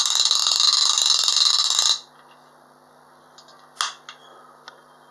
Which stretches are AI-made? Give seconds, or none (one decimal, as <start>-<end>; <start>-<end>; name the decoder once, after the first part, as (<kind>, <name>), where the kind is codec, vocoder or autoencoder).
none